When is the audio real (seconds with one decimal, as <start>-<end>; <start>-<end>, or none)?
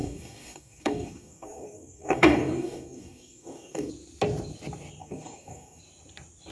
3.9-5.0; 5.8-6.5